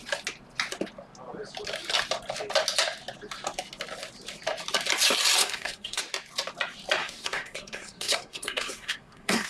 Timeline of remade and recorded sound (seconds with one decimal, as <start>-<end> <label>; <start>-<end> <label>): 0.0-5.4 recorded; 5.4-6.0 remade; 6.0-7.0 recorded; 7.0-9.5 remade